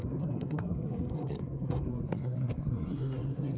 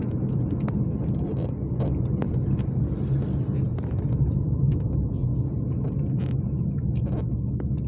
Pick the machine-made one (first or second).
first